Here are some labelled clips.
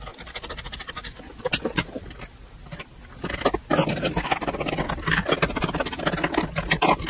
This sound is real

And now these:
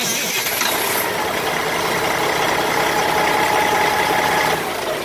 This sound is real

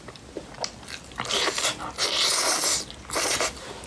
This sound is real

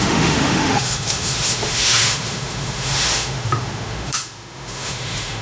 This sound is fake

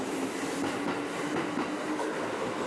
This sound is real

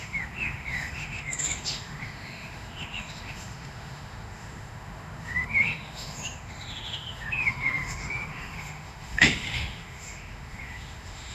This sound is fake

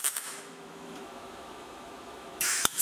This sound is fake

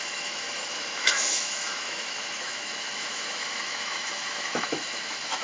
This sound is fake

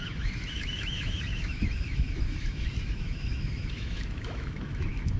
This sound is fake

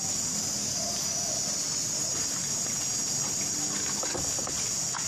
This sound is real